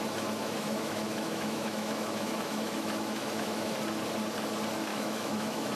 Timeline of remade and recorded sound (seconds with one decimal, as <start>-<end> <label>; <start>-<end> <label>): 0.0-0.4 recorded; 0.4-3.7 remade; 3.7-4.9 recorded; 4.9-5.7 remade

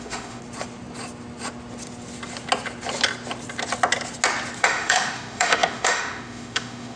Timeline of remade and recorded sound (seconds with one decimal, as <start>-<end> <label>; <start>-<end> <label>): 0.0-0.4 remade; 0.4-4.6 recorded; 4.6-7.0 remade

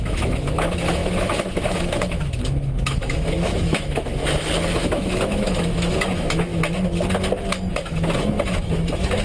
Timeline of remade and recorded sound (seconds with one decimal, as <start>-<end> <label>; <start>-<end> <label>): 0.0-4.2 remade; 4.2-4.7 recorded; 4.7-6.5 remade; 6.5-7.7 recorded; 7.7-9.2 remade

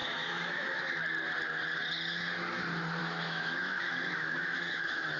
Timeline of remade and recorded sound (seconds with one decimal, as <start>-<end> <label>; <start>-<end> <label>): 0.0-0.8 remade; 0.8-3.0 recorded; 3.0-5.2 remade

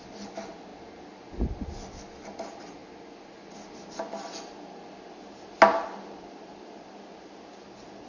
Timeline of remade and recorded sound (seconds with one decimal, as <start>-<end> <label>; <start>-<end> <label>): 0.0-8.1 recorded

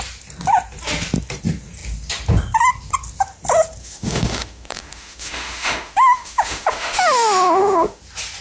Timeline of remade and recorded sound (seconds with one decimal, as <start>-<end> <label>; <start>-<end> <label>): 0.0-3.8 recorded; 3.8-8.0 remade; 8.0-8.4 recorded